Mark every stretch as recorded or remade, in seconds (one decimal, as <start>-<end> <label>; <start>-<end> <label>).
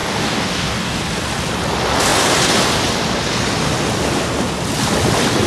0.0-1.0 remade; 1.0-5.5 recorded